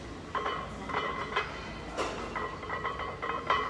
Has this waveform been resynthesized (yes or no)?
no